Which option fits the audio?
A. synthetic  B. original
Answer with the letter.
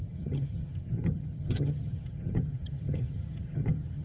A